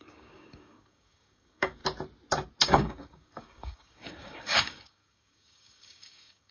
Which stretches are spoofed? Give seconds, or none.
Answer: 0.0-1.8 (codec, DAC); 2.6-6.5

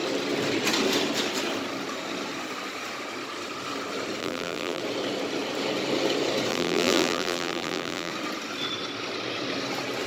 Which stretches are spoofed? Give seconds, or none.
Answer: 4.2-4.8 (vocoder, BigVGAN v2); 6.5-8.1